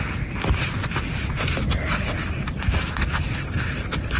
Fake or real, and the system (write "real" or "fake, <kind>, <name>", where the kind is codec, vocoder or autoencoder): real